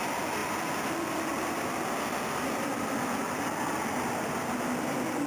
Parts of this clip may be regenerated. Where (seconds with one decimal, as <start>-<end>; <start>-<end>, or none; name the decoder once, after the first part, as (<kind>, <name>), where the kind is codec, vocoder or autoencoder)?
none